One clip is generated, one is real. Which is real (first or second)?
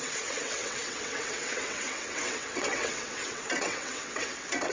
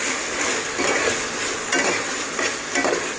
second